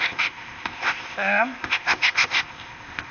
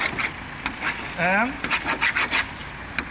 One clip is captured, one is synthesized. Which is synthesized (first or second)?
first